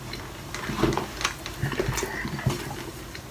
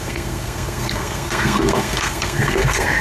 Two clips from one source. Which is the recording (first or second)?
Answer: first